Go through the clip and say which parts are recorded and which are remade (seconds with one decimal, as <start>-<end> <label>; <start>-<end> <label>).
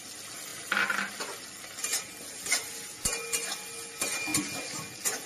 0.0-5.3 recorded